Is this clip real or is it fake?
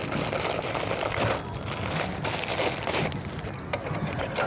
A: real